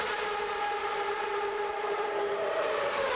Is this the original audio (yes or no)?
yes